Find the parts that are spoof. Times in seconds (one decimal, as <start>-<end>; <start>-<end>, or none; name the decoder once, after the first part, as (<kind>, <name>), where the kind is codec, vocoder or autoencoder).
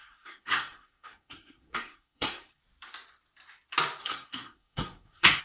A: 0.0-2.6 (codec, SNAC); 4.0-5.4